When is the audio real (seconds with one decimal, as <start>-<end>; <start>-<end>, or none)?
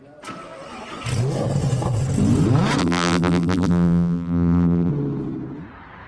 0.0-2.8; 4.9-6.1